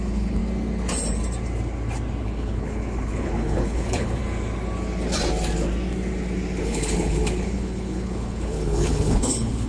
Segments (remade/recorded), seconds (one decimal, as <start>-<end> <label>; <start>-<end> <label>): 0.0-0.4 remade; 0.4-2.2 recorded; 2.2-4.2 remade; 4.2-6.6 recorded; 6.6-9.7 remade